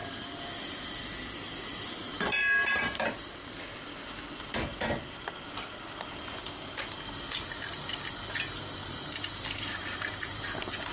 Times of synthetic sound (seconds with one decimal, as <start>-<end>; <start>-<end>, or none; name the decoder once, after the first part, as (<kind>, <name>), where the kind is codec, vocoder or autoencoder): 0.0-3.6 (vocoder, BigVGAN v2); 8.8-10.4